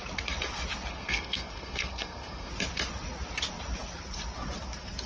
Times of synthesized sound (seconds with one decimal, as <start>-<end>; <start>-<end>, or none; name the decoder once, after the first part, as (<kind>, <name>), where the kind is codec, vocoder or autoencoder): 0.9-2.5 (codec, SNAC)